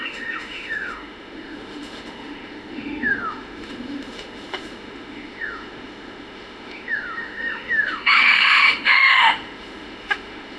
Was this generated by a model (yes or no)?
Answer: yes